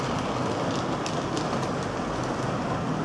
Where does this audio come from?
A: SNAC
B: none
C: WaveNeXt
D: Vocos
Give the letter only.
B